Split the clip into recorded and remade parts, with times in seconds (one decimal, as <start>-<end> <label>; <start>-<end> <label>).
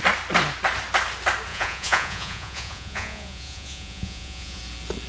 0.0-1.5 recorded; 1.5-4.6 remade; 4.6-5.1 recorded